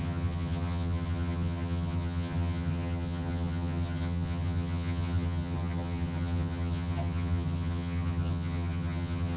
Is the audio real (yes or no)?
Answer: no